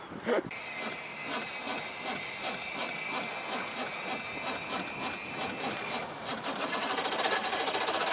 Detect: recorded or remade recorded